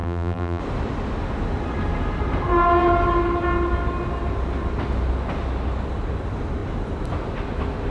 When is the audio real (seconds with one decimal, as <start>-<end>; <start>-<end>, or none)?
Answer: 0.6-7.9